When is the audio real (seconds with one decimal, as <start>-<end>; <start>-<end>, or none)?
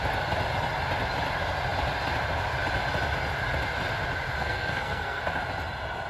0.0-4.4; 5.2-6.1